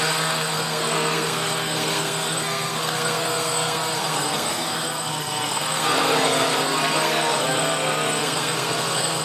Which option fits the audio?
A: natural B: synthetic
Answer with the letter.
B